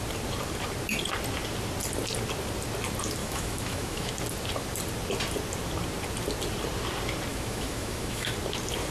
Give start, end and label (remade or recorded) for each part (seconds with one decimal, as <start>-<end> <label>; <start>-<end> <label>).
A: 0.0-3.2 recorded; 3.2-4.1 remade; 4.1-7.3 recorded; 7.3-8.3 remade; 8.3-8.9 recorded